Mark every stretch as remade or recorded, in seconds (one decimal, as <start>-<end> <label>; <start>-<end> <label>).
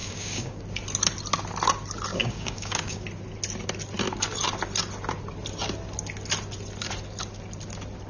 0.0-0.6 remade; 0.6-2.1 recorded; 2.1-3.0 remade; 3.0-8.1 recorded